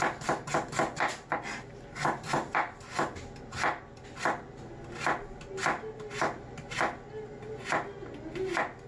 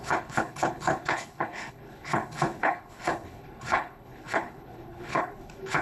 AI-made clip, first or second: second